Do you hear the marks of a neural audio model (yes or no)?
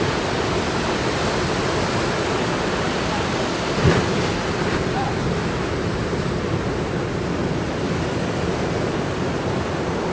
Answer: no